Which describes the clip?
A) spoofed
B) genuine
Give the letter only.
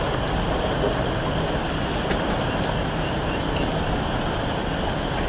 B